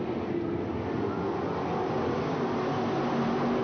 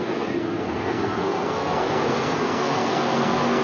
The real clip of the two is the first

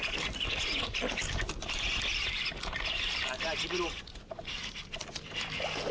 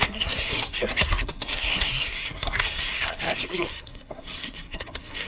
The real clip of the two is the first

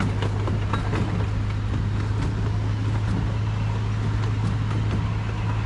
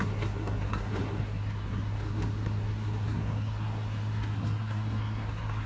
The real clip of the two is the first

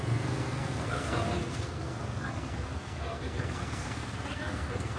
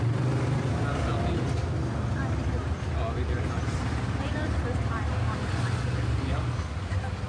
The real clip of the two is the second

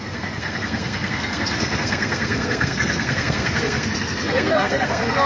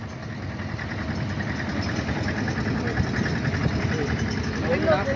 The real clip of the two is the second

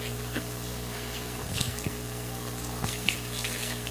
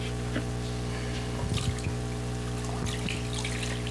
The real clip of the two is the second